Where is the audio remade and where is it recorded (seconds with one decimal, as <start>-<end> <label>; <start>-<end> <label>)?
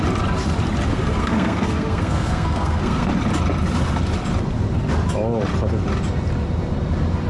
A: 0.0-0.9 recorded; 0.9-3.1 remade; 3.1-7.3 recorded